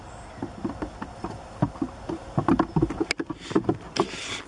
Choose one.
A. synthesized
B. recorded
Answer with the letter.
B